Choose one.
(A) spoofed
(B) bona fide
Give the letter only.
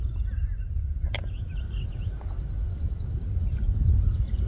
B